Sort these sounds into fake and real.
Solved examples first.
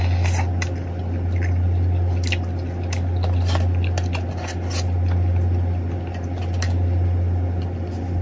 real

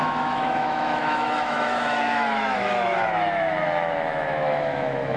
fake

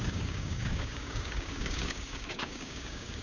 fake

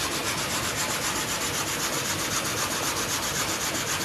real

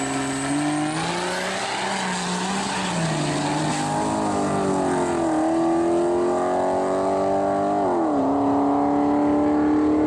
real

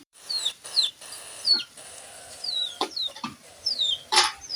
fake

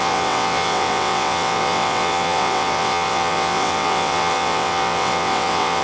fake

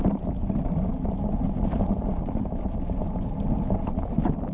real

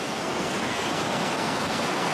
fake